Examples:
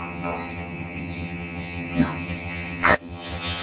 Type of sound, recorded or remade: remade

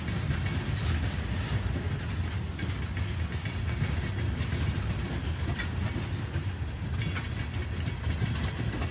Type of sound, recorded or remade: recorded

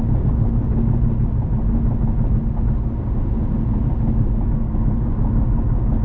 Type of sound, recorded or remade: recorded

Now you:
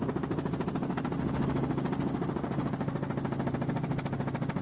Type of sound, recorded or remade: recorded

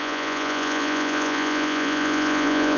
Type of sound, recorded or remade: remade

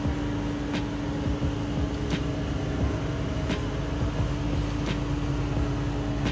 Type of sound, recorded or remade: recorded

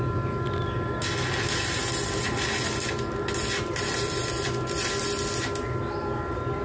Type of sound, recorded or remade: recorded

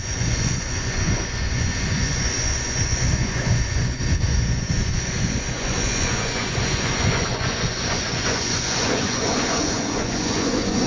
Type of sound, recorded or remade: remade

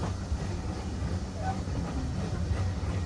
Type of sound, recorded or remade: recorded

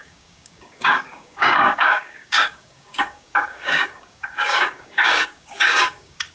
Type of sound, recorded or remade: remade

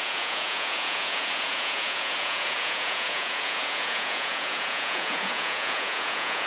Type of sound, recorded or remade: remade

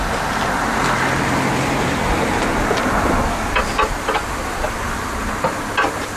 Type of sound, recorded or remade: recorded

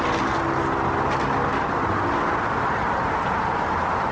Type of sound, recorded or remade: recorded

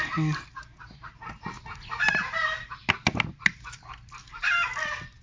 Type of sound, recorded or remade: recorded